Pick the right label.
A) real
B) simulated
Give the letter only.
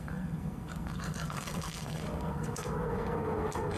B